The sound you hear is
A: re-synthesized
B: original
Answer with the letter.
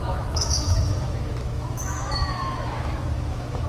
A